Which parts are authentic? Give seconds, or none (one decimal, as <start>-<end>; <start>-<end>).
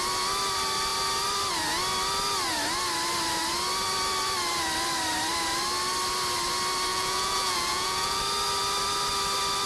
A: 0.0-6.9; 8.2-9.7